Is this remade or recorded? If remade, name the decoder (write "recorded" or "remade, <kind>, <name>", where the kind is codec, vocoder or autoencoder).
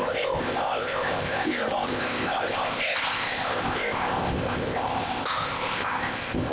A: remade, codec, ZipCodec